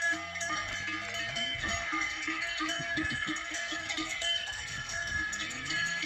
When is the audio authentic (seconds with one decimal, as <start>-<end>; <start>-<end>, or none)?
0.7-1.3